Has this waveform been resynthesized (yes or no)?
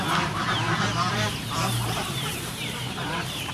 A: yes